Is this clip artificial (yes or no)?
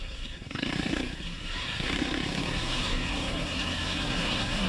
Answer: yes